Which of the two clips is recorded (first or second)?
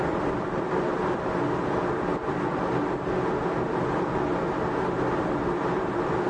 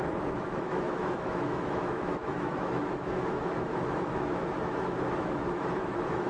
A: first